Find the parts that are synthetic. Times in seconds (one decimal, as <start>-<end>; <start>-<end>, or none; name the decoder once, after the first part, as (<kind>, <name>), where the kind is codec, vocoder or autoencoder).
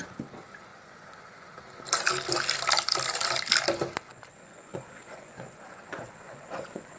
0.7-1.5 (vocoder, Vocos); 4.1-7.0